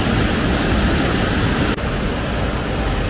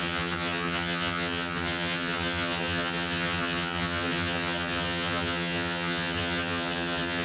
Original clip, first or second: first